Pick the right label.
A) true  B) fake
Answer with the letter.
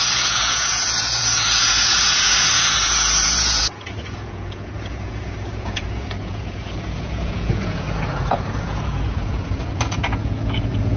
B